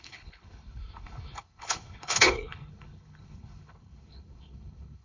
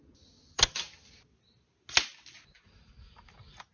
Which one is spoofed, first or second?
first